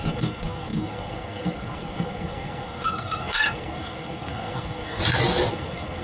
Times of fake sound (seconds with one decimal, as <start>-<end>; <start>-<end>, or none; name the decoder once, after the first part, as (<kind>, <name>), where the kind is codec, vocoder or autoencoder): 0.0-5.0 (codec, SNAC); 5.5-6.0